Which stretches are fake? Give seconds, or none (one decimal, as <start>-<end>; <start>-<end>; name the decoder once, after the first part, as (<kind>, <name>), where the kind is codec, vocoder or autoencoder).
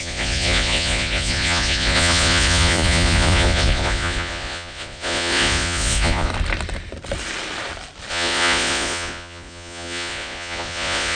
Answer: 0.0-6.3 (vocoder, Vocos); 8.1-11.1